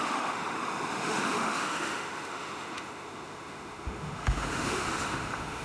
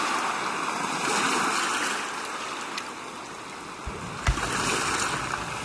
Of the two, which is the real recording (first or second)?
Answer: second